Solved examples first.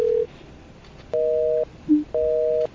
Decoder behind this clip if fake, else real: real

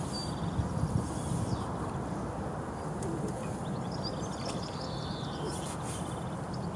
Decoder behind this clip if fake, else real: real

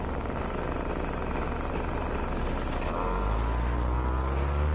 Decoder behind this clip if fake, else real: real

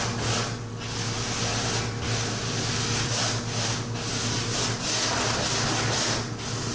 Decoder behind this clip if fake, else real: real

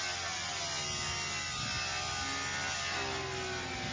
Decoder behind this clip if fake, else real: real